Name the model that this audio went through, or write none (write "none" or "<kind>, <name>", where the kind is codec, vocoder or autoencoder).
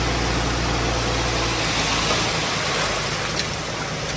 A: none